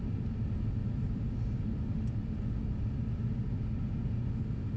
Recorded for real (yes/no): yes